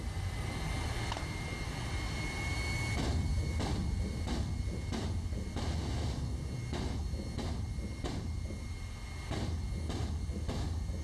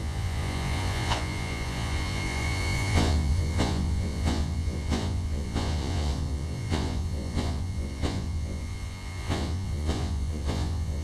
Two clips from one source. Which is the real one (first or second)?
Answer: first